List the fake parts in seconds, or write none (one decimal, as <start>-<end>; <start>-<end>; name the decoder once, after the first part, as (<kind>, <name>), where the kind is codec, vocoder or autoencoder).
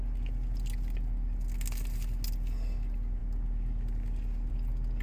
none